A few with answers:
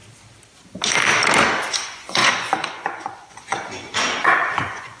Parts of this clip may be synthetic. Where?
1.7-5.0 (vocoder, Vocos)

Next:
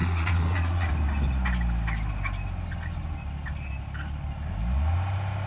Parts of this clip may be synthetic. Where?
0.0-0.9 (vocoder, Vocos)

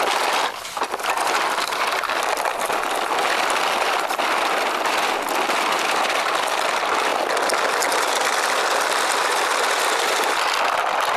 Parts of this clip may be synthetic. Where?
none

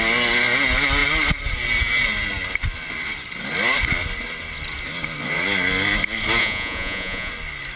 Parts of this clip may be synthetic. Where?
6.4-7.3 (vocoder, Vocos)

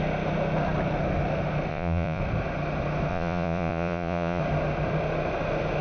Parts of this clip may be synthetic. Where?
1.7-2.2 (vocoder, Vocos); 3.1-4.4